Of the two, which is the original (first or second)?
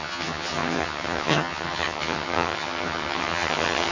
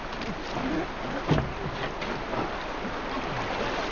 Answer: second